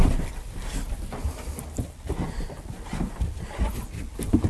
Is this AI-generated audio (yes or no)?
yes